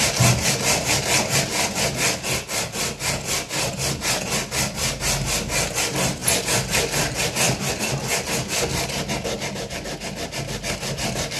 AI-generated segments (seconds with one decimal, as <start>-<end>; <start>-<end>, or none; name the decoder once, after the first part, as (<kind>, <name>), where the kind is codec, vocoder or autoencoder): 6.2-7.2 (vocoder, BigVGAN v2)